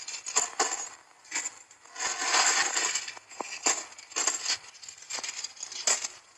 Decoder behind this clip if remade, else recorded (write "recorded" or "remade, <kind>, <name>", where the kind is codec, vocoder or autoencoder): recorded